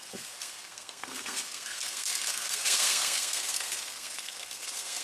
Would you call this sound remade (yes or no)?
yes